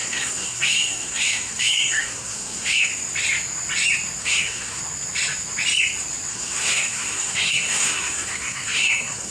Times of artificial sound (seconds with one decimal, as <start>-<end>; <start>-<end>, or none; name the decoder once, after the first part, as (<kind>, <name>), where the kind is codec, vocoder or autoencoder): 0.0-2.9 (codec, SNAC); 4.2-4.8; 6.3-9.3